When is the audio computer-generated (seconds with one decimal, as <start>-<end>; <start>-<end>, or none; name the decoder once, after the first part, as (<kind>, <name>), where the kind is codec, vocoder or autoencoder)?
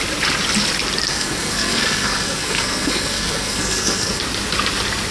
1.1-4.2 (codec, SNAC)